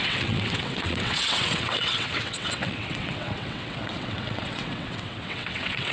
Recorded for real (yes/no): no